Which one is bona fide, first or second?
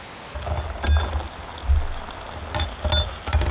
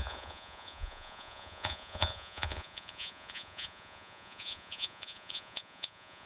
first